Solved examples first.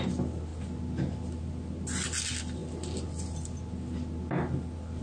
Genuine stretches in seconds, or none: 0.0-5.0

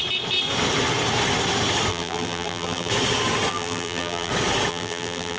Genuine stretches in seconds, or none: 0.0-1.9; 2.9-3.5; 4.3-4.7